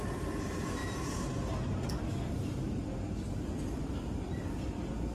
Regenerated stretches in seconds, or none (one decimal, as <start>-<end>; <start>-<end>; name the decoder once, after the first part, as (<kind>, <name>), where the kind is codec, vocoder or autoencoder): none